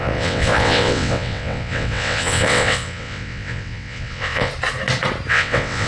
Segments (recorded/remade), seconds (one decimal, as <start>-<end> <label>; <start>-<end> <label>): 0.0-4.5 remade; 4.5-5.3 recorded; 5.3-5.9 remade